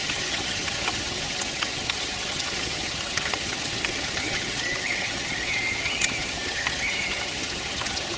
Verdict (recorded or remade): remade